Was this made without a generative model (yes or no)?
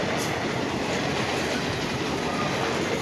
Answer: yes